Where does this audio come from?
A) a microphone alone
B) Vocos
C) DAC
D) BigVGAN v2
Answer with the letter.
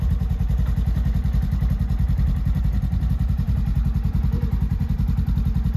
D